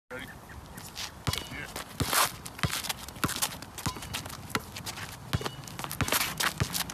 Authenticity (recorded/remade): recorded